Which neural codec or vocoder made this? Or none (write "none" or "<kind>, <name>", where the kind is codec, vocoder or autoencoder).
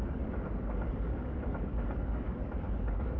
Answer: codec, DAC